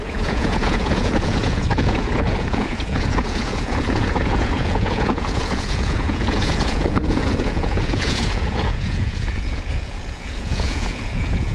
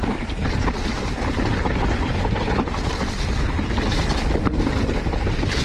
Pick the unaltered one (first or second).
second